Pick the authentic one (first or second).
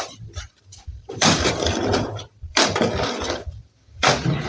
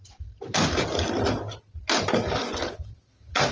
second